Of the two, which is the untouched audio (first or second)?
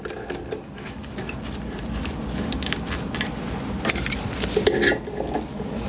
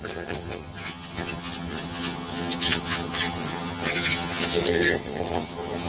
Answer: first